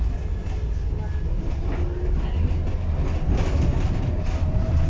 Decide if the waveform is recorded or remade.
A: recorded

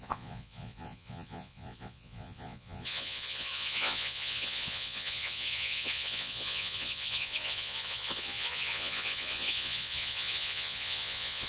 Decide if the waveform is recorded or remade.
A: remade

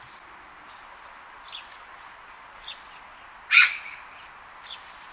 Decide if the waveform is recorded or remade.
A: recorded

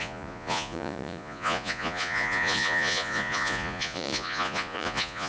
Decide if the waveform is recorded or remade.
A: remade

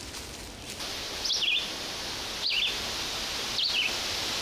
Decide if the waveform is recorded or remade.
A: recorded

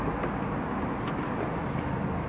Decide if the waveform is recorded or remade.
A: recorded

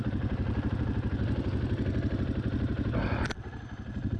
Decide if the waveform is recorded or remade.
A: recorded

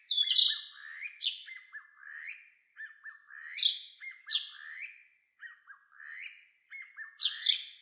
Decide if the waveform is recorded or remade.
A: recorded